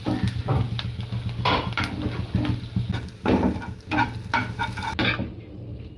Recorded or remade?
recorded